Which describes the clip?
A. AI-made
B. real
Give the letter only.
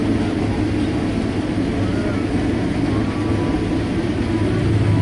B